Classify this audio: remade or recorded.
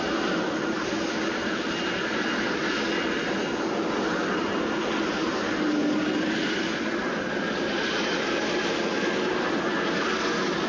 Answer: recorded